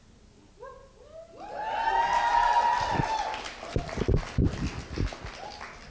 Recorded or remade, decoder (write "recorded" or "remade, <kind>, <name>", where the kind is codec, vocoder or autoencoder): recorded